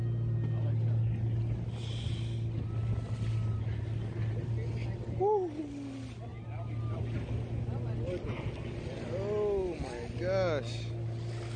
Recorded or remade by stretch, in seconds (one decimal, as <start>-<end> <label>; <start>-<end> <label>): 0.0-11.6 recorded